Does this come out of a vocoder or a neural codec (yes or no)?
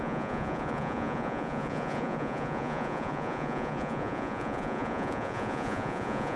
yes